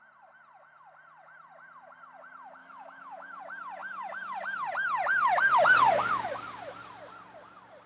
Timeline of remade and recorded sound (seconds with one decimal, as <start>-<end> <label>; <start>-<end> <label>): 0.0-2.6 recorded; 2.6-3.4 remade; 3.4-7.9 recorded